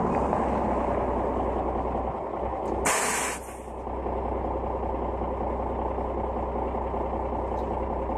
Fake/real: real